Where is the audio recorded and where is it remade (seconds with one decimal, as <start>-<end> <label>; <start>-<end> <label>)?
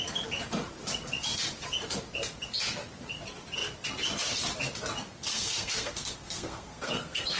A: 0.0-5.3 recorded; 5.3-7.4 remade